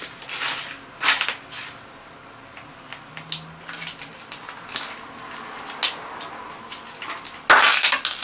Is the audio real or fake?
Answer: real